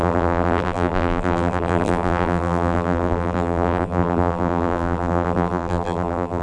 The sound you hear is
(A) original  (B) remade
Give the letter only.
B